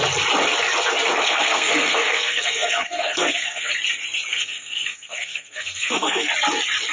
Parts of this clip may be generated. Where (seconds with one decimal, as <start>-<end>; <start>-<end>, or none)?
1.2-3.7; 4.3-6.3